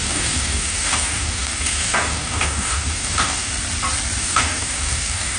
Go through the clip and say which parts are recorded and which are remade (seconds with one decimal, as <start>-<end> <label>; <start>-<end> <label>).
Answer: 0.0-3.5 remade; 3.5-4.2 recorded; 4.2-5.4 remade